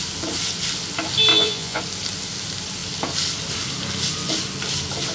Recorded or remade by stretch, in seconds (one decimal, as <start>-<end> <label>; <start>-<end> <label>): 0.0-1.3 recorded; 1.3-1.8 remade; 1.8-5.1 recorded